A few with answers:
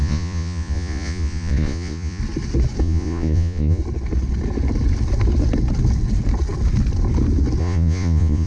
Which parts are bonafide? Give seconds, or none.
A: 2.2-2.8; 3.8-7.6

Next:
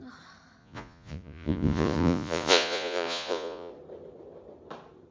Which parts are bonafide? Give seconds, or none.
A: 0.0-0.6; 3.7-5.1

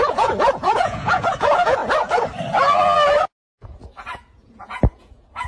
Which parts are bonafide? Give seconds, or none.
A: 1.8-3.6

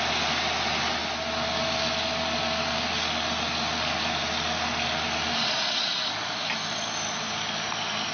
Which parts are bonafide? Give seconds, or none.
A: 0.0-8.1